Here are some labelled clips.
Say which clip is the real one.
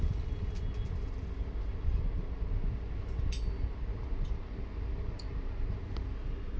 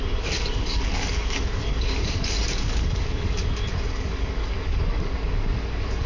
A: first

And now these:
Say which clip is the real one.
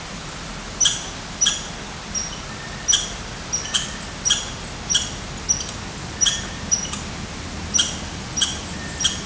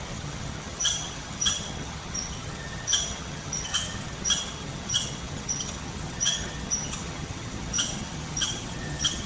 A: first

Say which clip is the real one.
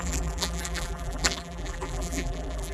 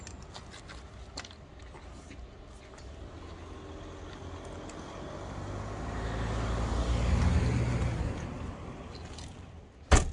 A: second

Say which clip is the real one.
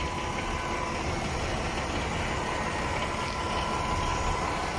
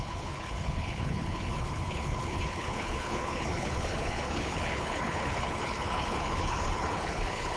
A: first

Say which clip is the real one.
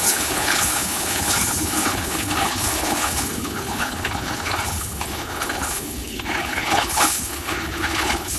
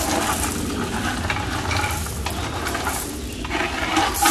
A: second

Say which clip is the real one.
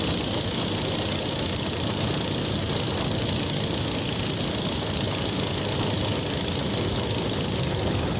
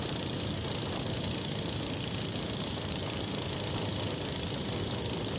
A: first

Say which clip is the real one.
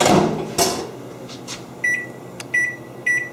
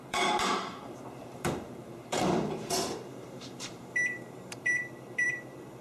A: first